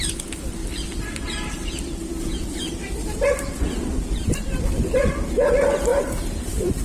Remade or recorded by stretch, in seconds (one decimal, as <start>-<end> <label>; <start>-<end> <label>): 0.0-0.6 recorded; 0.6-4.6 remade; 4.6-5.9 recorded; 5.9-6.8 remade